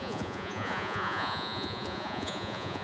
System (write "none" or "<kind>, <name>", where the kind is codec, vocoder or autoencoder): vocoder, Vocos